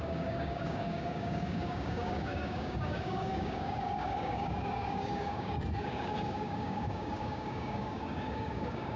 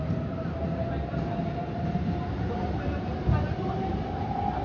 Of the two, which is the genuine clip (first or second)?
second